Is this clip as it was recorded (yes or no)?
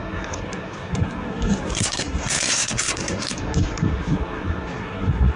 no